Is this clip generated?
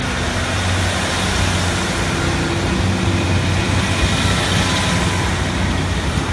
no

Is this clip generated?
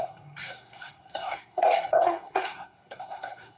yes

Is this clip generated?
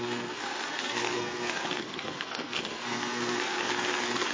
yes